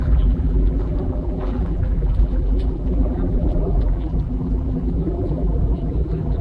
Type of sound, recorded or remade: remade